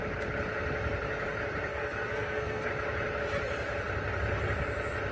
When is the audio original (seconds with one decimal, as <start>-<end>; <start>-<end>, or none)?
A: 0.0-1.7; 2.7-5.1